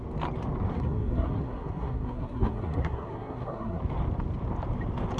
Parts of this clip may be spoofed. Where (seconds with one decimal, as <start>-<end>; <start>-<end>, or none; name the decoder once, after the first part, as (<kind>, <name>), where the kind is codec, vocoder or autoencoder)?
0.7-3.8 (codec, SNAC)